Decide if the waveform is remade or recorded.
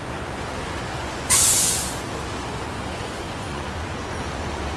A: remade